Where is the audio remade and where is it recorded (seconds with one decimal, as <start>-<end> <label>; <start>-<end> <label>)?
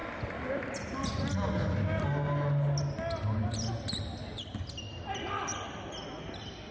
0.0-6.7 recorded